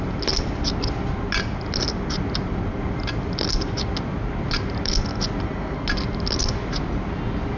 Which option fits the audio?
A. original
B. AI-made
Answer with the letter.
A